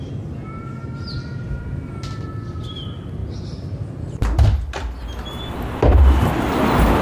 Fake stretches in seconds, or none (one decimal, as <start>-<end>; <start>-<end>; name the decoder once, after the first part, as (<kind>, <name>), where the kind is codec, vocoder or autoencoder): none